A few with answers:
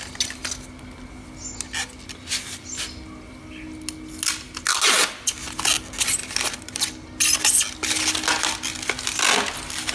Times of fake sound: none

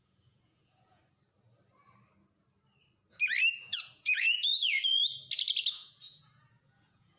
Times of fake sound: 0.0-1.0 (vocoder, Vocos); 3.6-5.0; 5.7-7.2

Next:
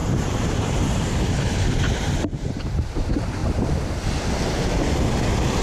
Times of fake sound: 0.0-2.9 (vocoder, BigVGAN v2)

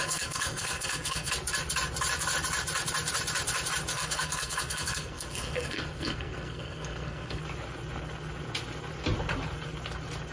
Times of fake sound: 0.0-1.3 (codec, SNAC); 3.9-7.4

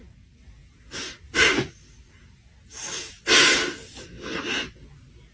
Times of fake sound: none

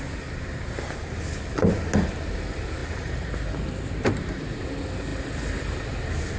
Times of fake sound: 2.8-3.3 (vocoder, BigVGAN v2)